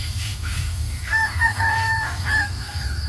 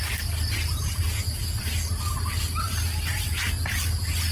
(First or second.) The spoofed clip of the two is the first